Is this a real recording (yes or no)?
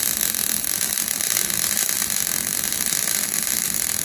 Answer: yes